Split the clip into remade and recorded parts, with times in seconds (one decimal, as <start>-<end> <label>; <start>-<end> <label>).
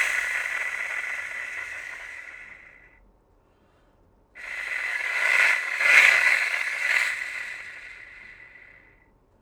0.0-1.6 recorded; 1.6-2.3 remade; 2.3-4.9 recorded; 4.9-7.1 remade; 7.1-9.4 recorded